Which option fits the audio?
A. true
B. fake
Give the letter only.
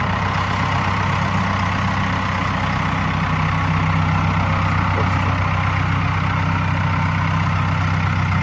A